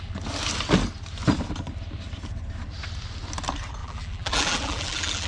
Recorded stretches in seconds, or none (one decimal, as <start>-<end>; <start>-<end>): 0.0-3.8